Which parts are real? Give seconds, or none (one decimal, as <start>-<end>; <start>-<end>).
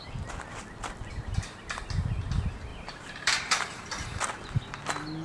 0.0-2.7; 4.2-5.2